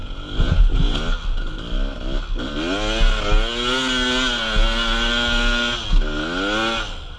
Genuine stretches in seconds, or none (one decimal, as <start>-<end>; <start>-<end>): 1.0-7.2